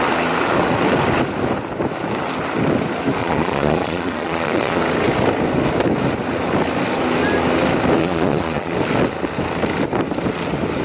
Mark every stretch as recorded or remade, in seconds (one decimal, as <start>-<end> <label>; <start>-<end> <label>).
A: 0.0-3.2 recorded; 3.2-4.8 remade; 4.8-8.0 recorded; 8.0-8.7 remade; 8.7-10.8 recorded